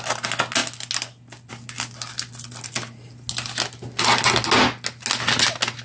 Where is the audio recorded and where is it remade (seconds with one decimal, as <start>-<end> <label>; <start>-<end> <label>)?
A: 0.0-5.8 recorded